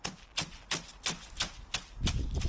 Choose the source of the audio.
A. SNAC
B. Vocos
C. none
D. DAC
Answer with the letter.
C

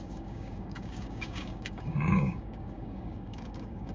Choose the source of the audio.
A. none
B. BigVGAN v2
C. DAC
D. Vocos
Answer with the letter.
C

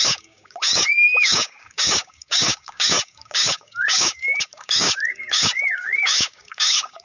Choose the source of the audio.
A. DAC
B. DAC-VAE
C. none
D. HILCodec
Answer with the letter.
A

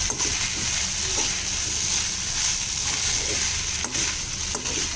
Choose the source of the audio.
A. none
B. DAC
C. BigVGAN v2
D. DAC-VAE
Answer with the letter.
A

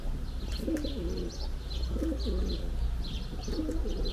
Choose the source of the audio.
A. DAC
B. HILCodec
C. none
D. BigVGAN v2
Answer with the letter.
C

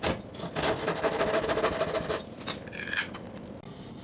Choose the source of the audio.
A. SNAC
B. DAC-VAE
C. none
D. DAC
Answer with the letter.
C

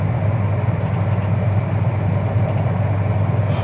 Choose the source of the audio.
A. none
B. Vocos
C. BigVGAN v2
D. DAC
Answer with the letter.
A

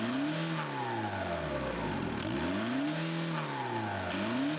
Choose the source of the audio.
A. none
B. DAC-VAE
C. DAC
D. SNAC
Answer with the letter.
A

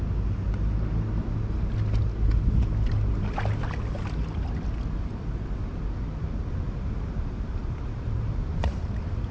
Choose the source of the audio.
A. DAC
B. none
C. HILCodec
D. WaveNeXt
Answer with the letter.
B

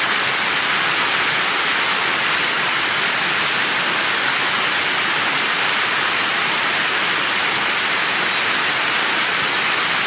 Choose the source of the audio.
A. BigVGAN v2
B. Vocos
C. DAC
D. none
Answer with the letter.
D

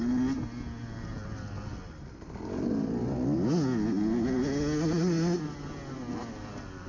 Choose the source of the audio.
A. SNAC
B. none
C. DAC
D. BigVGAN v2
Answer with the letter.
B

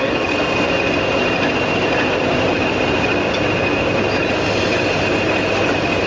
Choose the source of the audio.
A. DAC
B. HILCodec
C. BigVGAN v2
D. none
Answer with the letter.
D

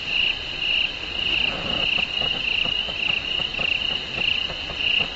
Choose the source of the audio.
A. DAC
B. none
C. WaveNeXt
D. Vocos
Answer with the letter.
B